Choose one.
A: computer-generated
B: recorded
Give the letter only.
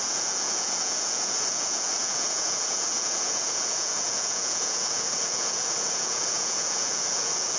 A